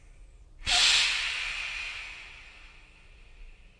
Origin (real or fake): real